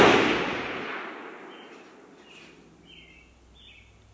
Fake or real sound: real